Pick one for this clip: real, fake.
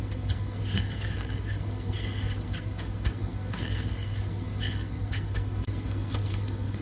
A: fake